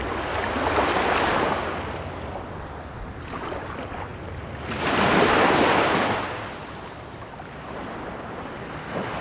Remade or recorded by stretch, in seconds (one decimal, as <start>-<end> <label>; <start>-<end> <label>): 0.0-9.2 recorded